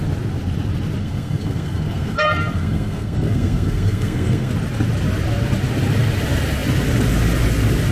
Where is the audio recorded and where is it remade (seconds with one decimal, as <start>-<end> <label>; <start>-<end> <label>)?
0.0-1.0 recorded; 1.0-4.5 remade; 4.5-7.9 recorded